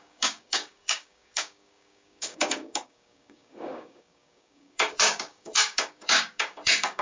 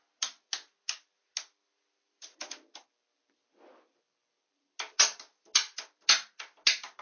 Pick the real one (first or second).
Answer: second